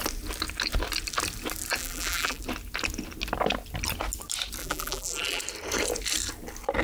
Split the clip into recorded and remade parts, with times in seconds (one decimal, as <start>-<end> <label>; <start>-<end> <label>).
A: 0.0-1.8 recorded; 1.8-2.4 remade; 2.4-4.6 recorded; 4.6-5.4 remade; 5.4-6.8 recorded